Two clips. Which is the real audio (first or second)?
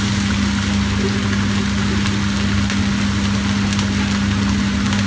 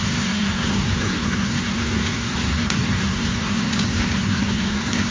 first